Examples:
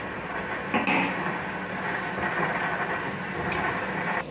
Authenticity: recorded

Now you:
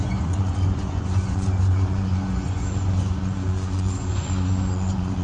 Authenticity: remade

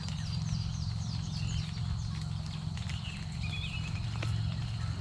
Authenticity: recorded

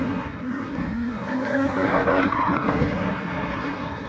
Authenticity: remade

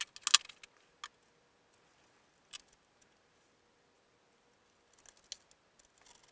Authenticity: recorded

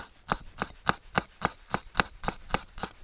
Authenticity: remade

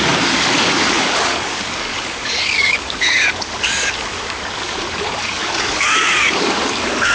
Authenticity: remade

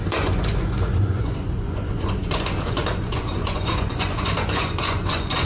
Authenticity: remade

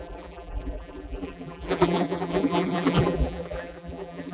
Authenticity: remade